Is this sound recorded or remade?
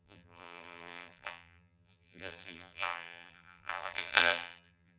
remade